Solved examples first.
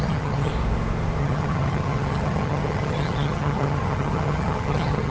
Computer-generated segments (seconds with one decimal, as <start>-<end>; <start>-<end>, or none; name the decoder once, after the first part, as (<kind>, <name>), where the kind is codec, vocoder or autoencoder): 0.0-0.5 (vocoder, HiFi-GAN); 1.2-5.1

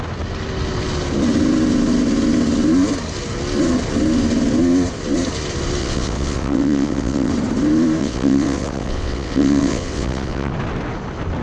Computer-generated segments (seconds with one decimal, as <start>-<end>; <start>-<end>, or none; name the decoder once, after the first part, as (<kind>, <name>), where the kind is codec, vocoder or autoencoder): 5.8-7.3 (vocoder, WaveNeXt); 8.0-10.5

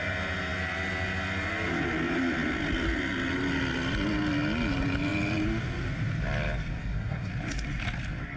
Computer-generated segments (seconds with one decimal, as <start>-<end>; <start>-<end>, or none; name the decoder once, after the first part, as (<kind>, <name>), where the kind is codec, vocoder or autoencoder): 6.8-7.3 (codec, SNAC)

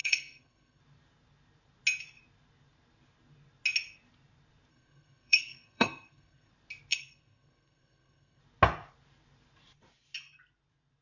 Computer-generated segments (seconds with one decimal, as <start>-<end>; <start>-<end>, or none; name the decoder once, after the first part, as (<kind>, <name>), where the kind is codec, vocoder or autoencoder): 0.0-0.8 (codec, SNAC); 4.7-6.5; 6.9-8.4